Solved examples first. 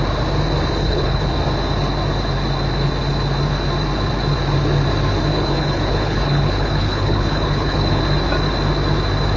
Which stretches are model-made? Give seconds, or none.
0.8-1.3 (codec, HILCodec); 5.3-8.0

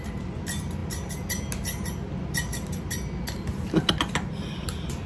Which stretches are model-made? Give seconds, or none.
none

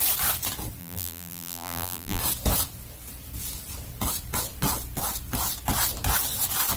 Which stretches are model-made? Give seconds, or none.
0.8-2.2 (vocoder, BigVGAN v2)

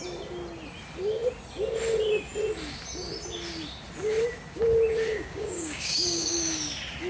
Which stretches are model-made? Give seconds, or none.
5.1-6.5 (codec, DAC)

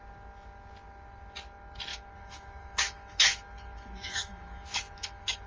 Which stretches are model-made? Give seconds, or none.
1.9-5.5 (autoencoder, DAC-VAE)